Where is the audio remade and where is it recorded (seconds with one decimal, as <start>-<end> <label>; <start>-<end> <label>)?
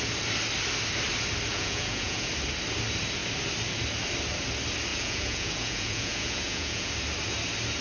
0.0-1.5 recorded; 1.5-2.3 remade; 2.3-4.9 recorded; 4.9-6.9 remade; 6.9-7.8 recorded